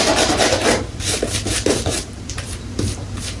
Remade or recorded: remade